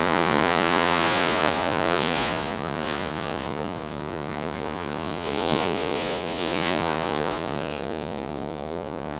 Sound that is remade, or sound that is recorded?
remade